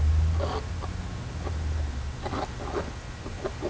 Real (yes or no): yes